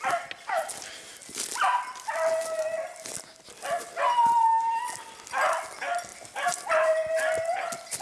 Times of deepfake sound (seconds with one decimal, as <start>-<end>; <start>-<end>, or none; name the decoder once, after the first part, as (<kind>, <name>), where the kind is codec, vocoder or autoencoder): none